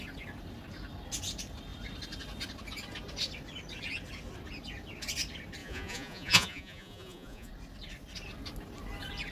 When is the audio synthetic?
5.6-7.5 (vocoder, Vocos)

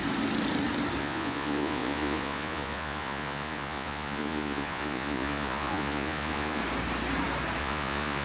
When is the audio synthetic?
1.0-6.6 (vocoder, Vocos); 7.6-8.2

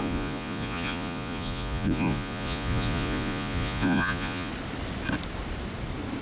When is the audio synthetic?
0.0-4.5 (vocoder, Vocos)

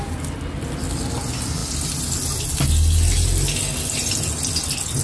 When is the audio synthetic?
none

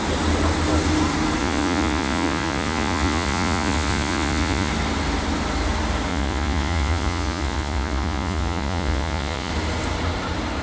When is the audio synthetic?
1.4-4.7 (vocoder, Vocos); 6.1-9.5